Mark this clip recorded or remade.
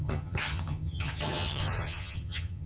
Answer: remade